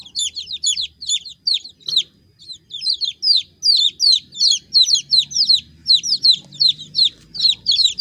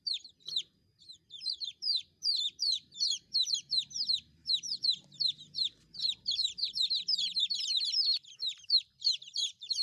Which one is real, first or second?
first